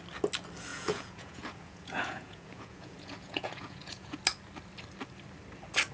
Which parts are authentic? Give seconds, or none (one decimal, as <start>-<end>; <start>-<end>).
0.0-0.7; 4.2-5.9